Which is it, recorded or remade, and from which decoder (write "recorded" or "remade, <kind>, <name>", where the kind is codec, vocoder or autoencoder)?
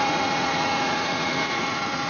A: remade, vocoder, Vocos